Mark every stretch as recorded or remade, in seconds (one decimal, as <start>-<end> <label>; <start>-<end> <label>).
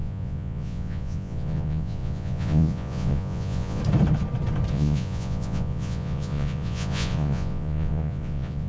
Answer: 0.0-3.8 remade; 3.8-4.7 recorded; 4.7-8.7 remade